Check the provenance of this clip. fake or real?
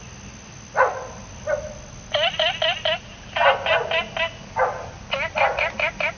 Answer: real